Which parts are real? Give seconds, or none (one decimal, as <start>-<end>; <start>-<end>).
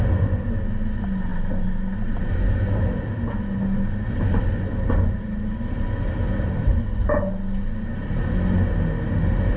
0.0-9.6